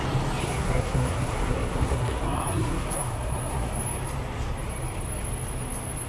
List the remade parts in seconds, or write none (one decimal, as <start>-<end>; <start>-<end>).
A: 0.4-3.7